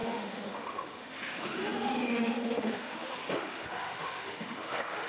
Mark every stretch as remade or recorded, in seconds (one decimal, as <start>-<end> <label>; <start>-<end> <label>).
0.0-5.1 remade